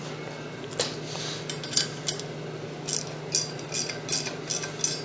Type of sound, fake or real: real